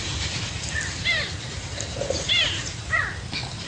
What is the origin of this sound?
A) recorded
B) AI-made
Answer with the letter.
A